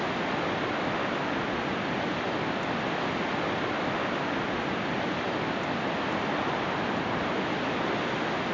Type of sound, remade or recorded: recorded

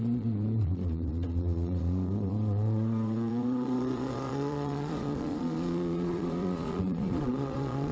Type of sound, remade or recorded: remade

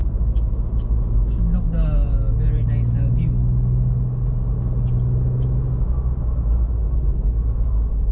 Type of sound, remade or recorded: recorded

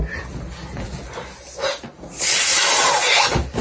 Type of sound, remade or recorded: recorded